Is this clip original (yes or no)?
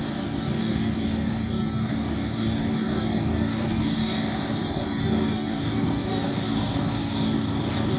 no